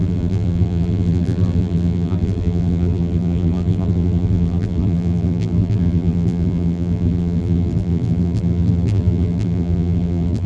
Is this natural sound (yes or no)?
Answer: no